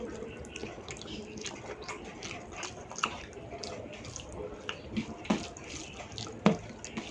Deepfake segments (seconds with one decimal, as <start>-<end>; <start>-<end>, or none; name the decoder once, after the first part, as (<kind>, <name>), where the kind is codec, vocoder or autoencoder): none